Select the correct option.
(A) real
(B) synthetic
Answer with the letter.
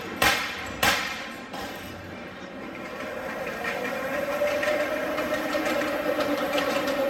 B